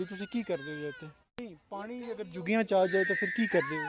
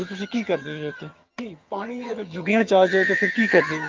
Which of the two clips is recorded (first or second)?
first